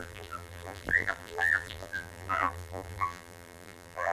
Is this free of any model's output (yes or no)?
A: no